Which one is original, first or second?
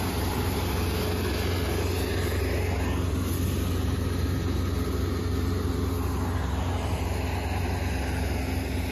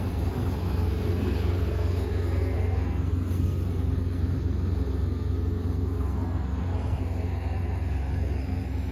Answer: first